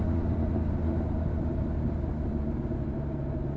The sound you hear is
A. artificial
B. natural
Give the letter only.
B